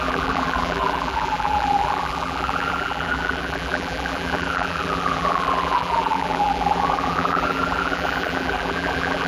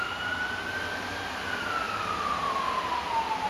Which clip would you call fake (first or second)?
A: first